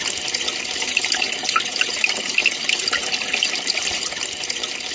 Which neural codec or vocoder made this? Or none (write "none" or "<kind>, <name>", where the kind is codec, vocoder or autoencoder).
vocoder, BigVGAN v2